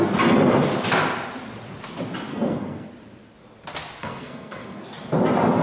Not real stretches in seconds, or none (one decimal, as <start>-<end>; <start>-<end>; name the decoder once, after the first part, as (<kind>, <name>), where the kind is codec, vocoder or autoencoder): 2.3-2.9 (codec, SNAC); 4.0-4.8